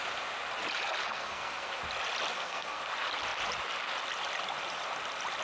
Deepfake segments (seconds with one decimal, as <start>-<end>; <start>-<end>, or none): 1.0-1.8; 2.3-2.8